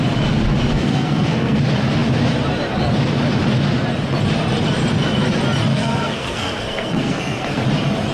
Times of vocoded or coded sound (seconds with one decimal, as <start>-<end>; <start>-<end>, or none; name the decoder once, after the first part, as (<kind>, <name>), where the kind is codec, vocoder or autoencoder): 0.7-1.6 (codec, SNAC); 5.7-7.6